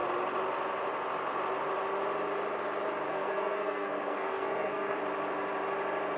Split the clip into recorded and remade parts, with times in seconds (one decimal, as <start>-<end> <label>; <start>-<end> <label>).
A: 0.0-3.1 recorded; 3.1-5.0 remade; 5.0-6.2 recorded